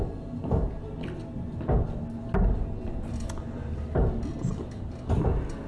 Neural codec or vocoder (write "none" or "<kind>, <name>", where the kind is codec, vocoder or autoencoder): none